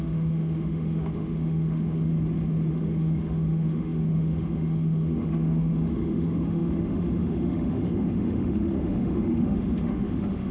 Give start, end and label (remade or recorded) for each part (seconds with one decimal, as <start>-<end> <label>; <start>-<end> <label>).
0.0-2.1 remade; 2.1-2.7 recorded; 2.7-10.5 remade